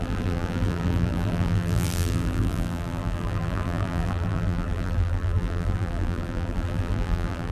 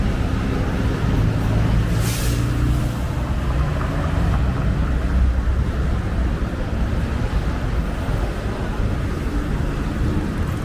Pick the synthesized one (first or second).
first